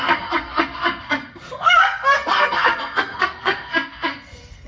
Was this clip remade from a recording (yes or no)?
yes